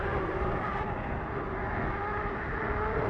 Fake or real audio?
real